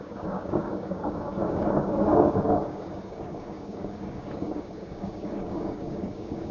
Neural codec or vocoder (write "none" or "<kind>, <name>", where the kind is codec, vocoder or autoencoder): codec, DAC